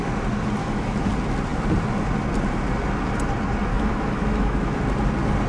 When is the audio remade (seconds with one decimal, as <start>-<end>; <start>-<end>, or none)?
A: 0.6-1.1; 3.7-4.8